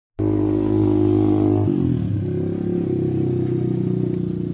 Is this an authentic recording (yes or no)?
yes